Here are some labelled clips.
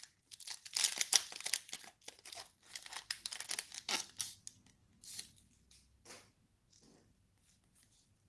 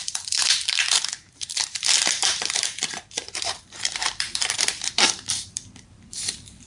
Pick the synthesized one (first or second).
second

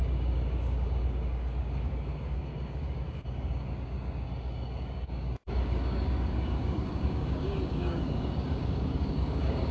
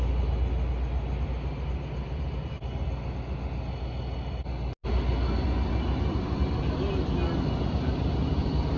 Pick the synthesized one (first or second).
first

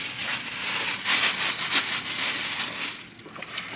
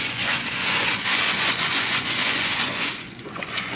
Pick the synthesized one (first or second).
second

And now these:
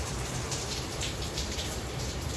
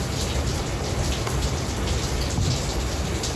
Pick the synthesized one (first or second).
first